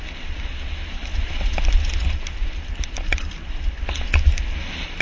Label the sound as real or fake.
real